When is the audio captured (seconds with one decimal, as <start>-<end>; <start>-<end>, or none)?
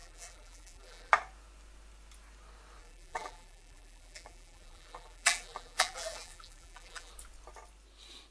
1.1-2.8; 7.1-8.3